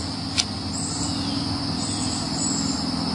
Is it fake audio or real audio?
real